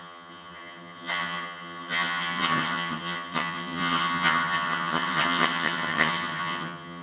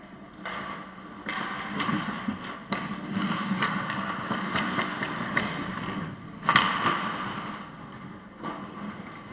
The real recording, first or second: second